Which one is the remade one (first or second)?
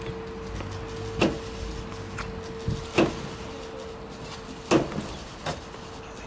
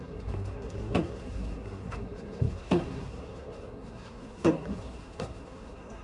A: second